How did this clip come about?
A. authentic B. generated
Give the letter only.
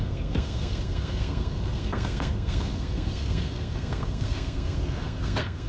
B